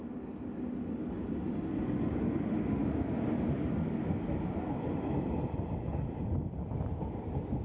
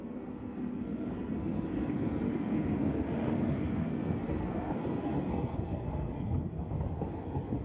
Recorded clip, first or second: first